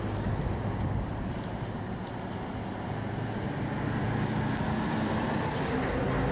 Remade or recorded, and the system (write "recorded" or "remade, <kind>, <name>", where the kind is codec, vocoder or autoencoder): recorded